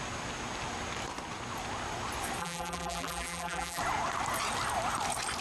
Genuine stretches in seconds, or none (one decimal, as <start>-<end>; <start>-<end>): 0.0-2.4; 3.8-5.4